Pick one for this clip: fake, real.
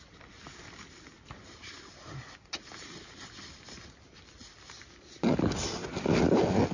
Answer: real